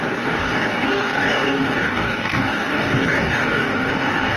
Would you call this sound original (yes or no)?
no